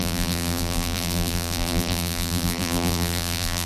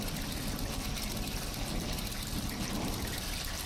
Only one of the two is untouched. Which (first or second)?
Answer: second